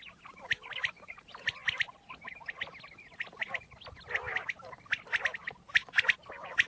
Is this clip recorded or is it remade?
recorded